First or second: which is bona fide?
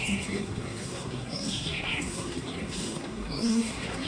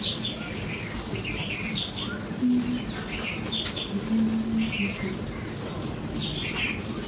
second